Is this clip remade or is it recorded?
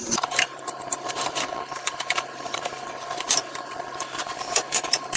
remade